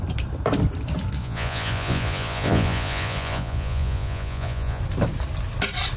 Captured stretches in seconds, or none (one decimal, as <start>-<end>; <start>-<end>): 0.0-1.2; 4.8-6.0